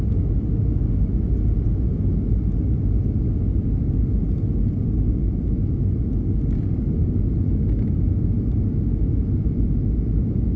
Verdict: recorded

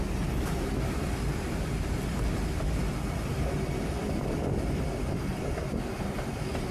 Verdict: recorded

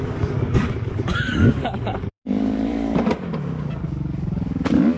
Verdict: remade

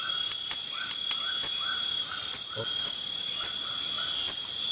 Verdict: recorded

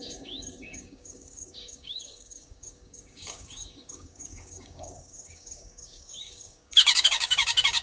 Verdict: remade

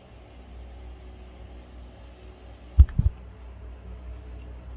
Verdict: recorded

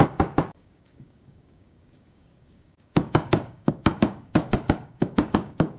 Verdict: remade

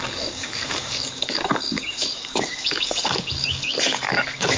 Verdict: remade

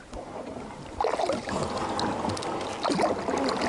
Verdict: recorded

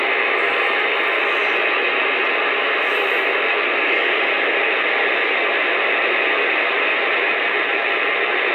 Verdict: recorded